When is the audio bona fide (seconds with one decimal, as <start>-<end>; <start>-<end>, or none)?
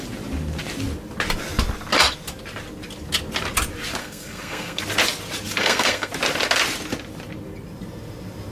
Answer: 0.0-4.0; 4.8-5.6; 6.1-8.5